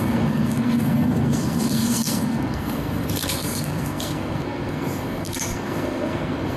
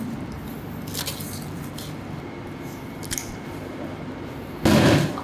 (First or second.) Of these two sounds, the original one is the second